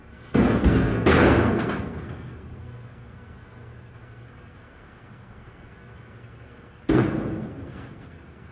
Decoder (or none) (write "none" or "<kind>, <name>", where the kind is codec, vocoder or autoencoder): codec, SNAC